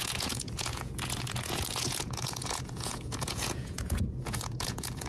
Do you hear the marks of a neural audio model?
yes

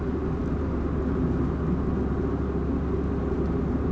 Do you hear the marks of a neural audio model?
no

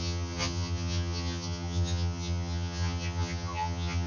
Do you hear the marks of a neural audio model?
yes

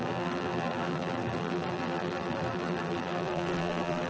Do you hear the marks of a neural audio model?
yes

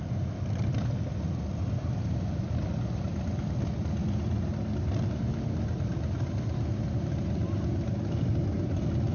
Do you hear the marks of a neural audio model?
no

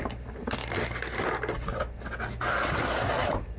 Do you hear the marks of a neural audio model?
no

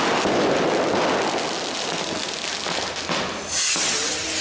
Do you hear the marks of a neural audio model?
no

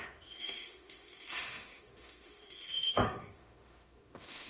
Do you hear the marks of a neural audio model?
yes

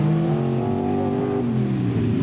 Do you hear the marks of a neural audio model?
no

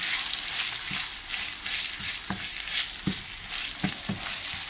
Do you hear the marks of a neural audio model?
no